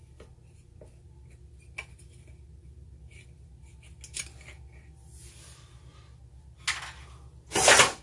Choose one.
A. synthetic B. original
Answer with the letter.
B